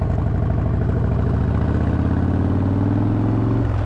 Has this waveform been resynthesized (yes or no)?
no